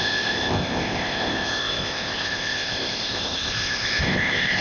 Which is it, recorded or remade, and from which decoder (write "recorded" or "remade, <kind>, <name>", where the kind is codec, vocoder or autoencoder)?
remade, codec, ZipCodec